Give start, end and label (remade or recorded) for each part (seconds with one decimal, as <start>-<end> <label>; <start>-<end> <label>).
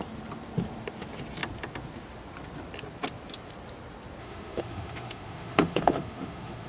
0.0-4.2 recorded; 4.2-6.7 remade